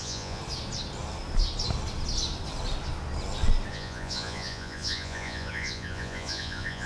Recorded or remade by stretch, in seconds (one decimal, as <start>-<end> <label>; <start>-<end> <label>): 0.0-0.4 remade; 0.4-3.7 recorded; 3.7-6.9 remade